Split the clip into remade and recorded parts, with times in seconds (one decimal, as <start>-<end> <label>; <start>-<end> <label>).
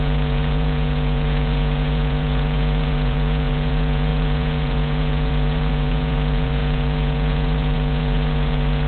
0.0-8.9 remade